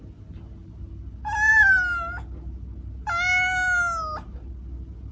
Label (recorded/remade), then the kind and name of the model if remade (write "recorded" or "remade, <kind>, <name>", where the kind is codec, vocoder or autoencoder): recorded